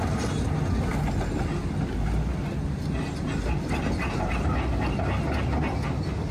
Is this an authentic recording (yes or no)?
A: yes